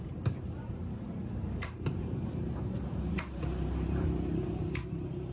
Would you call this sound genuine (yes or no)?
no